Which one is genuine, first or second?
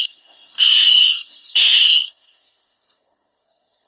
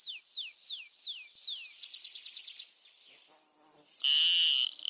second